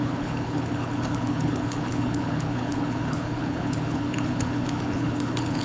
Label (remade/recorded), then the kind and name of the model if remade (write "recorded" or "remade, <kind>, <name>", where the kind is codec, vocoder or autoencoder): remade, codec, HILCodec